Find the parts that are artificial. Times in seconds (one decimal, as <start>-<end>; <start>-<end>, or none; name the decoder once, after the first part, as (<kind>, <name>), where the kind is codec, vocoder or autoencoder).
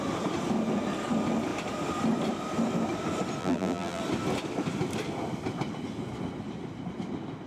3.4-4.0 (vocoder, BigVGAN v2)